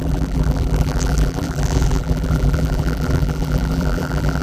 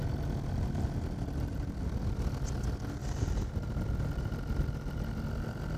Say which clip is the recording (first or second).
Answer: second